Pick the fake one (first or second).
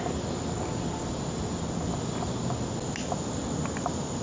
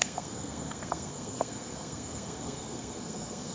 second